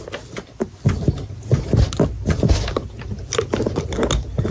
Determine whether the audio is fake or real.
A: real